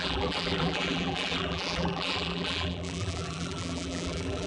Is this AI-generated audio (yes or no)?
yes